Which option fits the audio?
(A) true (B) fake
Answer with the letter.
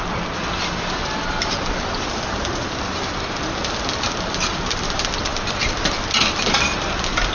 B